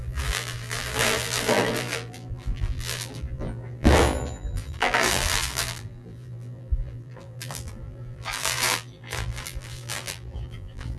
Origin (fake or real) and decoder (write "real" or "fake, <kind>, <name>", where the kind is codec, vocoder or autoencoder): fake, vocoder, BigVGAN v2